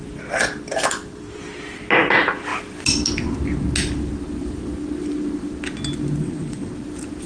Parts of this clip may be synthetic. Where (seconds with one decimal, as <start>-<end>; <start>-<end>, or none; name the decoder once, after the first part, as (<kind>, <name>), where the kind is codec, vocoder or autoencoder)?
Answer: 6.2-6.7 (vocoder, WaveNeXt)